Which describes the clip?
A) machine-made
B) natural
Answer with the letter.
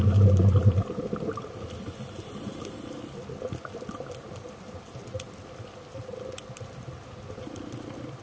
B